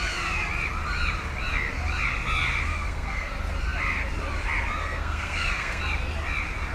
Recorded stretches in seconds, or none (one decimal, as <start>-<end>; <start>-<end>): 0.0-2.7; 3.3-4.8; 5.8-6.7